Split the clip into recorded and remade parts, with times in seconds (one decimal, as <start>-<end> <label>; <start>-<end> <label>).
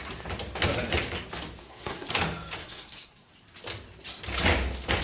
0.0-1.6 recorded; 1.6-2.1 remade; 2.1-2.6 recorded; 2.6-3.3 remade; 3.3-5.0 recorded